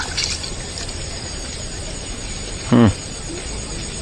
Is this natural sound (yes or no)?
no